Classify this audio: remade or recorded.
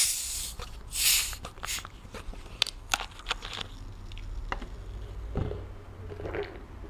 recorded